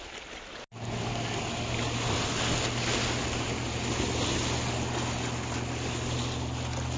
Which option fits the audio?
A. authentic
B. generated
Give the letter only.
A